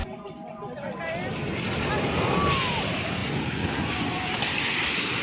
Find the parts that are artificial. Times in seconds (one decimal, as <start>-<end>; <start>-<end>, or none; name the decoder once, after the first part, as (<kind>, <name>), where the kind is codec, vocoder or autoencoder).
3.2-4.3 (vocoder, Vocos)